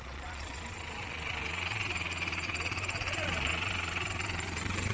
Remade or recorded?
remade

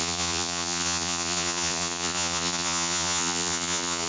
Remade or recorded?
remade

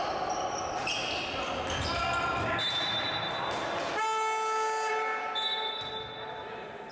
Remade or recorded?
recorded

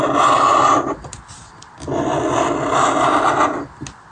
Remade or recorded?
recorded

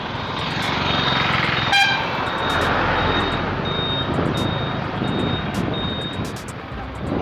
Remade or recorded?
recorded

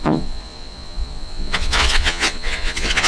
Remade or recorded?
remade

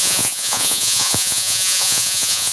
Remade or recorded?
remade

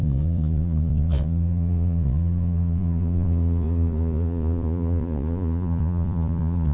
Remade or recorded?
remade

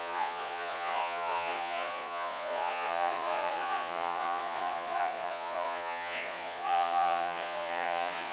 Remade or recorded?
remade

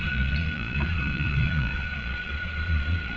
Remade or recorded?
remade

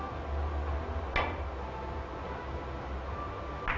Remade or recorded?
recorded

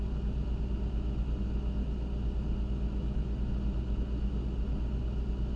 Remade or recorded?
recorded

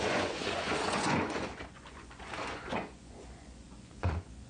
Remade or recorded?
remade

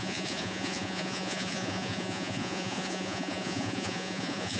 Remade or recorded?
remade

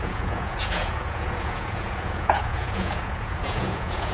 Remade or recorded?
remade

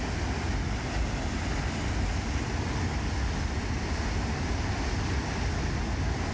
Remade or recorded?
recorded